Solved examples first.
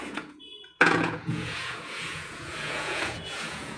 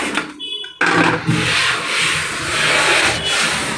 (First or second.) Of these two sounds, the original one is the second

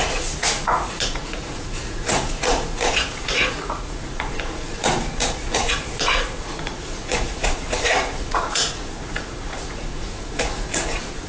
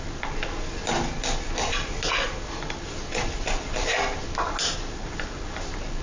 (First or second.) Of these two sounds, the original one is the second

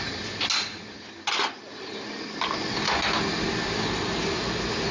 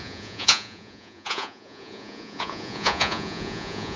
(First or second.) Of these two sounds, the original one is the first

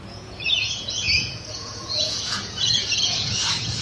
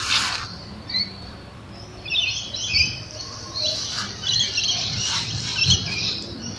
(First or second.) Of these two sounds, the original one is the second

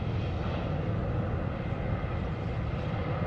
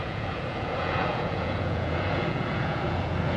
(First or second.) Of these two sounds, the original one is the first